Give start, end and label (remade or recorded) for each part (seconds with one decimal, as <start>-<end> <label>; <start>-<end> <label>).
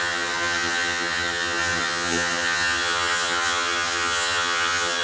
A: 0.0-5.0 remade